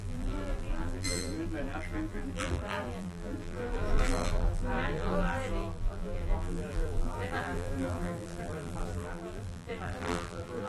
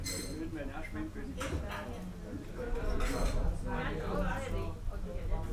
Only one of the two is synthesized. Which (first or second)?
first